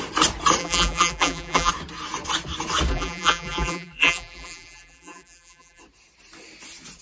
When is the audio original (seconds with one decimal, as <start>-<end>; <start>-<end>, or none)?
0.0-0.6; 1.7-2.9; 5.8-7.0